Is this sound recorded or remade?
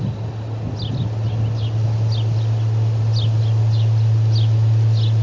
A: recorded